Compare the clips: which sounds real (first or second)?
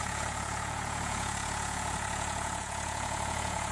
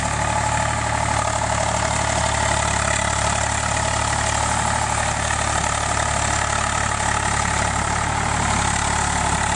second